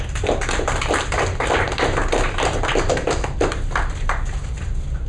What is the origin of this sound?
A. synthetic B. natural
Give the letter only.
B